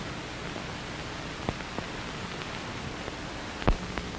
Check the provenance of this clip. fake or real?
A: real